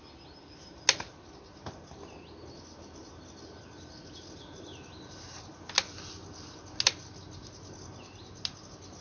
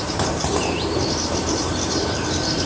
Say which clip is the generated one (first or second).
second